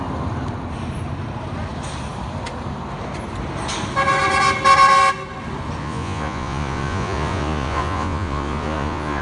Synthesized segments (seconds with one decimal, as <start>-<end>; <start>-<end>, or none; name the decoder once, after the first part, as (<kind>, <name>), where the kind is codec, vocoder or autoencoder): 5.8-9.2 (vocoder, Vocos)